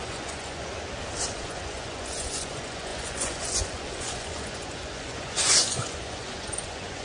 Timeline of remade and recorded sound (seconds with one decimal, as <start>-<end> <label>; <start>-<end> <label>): 0.0-0.7 remade; 0.7-1.3 recorded; 1.3-7.0 remade